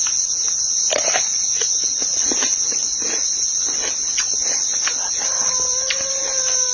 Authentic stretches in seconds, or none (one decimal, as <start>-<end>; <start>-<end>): 0.0-6.7